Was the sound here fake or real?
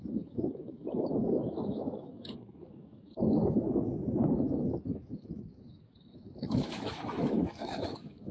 fake